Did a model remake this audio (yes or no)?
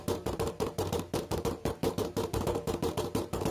yes